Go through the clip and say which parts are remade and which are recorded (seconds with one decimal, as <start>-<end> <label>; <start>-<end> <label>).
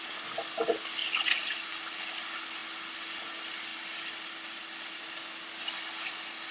0.0-1.0 recorded; 1.0-2.2 remade; 2.2-3.7 recorded; 3.7-5.0 remade; 5.0-6.5 recorded